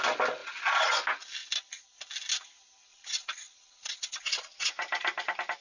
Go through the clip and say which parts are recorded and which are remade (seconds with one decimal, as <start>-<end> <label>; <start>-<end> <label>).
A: 0.0-0.4 recorded; 0.4-0.9 remade; 0.9-2.9 recorded; 2.9-4.7 remade; 4.7-5.6 recorded